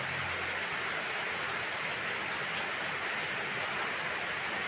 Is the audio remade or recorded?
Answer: recorded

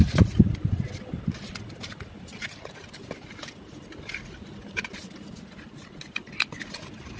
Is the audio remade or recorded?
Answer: recorded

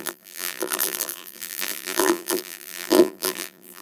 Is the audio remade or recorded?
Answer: remade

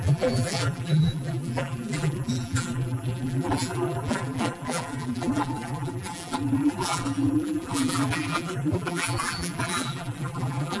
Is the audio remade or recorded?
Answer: remade